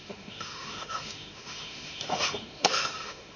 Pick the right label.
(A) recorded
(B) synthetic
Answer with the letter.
B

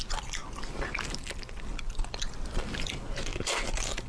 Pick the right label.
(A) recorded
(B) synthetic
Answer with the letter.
A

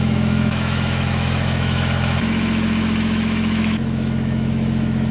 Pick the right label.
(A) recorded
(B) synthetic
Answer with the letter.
B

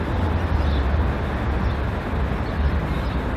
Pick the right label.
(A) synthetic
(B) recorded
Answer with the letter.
B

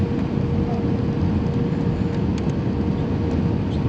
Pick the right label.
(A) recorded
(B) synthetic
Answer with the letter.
A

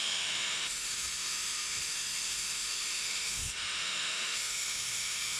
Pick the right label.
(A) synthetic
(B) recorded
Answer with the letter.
A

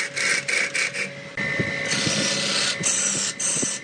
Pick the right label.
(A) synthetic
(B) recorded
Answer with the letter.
B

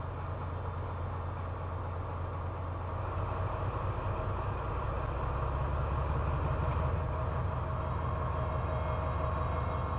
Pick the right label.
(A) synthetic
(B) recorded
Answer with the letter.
B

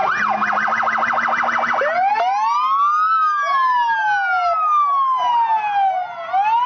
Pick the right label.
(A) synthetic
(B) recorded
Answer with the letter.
B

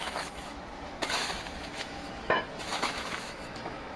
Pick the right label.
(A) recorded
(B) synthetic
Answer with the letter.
B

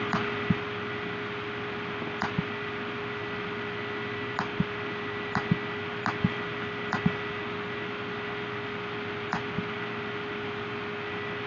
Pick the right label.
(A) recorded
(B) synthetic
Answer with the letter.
A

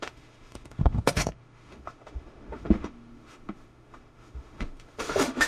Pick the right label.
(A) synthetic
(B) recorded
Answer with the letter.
A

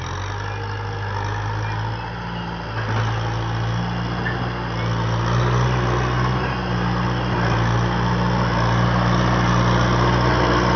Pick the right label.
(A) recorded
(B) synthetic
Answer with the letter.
A